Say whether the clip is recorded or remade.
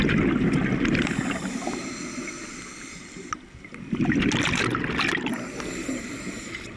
recorded